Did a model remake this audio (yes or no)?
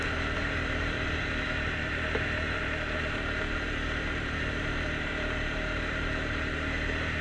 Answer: yes